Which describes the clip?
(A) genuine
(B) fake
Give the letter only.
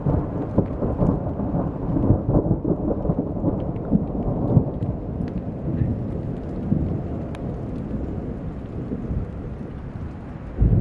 A